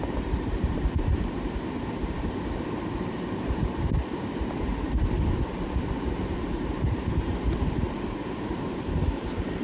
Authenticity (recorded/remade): remade